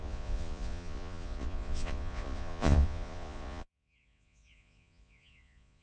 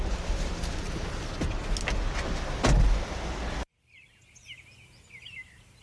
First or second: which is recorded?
second